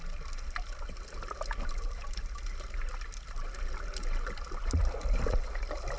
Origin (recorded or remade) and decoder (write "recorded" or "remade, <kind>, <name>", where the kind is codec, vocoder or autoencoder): recorded